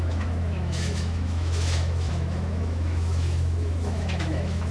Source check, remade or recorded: remade